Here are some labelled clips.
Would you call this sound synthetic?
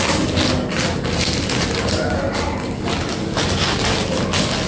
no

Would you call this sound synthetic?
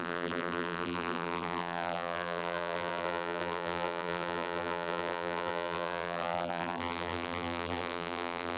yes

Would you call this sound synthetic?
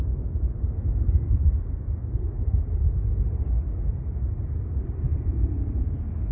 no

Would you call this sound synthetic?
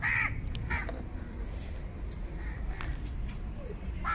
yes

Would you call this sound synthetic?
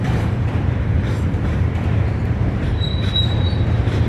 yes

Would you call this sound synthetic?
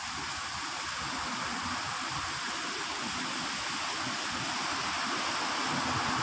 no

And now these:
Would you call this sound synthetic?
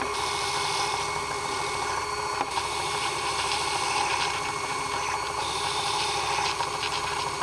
yes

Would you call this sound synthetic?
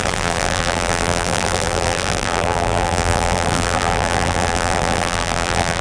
yes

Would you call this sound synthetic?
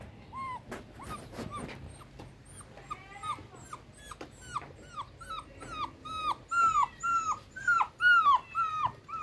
no